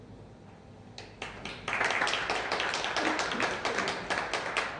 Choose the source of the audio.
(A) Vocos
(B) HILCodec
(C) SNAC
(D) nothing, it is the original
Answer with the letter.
D